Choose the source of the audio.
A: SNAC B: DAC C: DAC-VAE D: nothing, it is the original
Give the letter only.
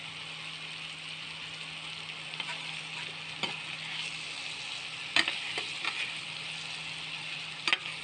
D